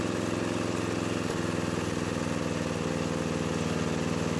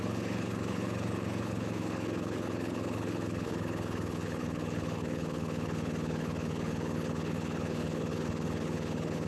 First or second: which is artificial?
second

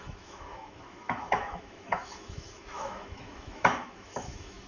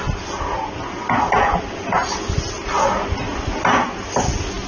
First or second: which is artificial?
first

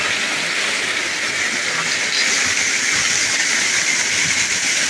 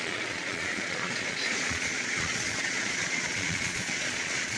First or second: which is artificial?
second